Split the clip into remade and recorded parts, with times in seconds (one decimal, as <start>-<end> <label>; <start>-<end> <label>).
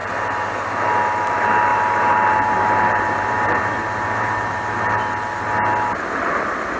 0.0-0.7 remade; 0.7-1.7 recorded; 1.7-5.0 remade; 5.0-6.8 recorded